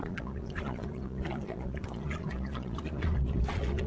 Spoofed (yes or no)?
yes